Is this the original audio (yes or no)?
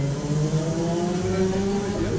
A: yes